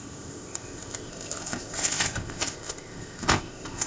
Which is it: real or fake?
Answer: fake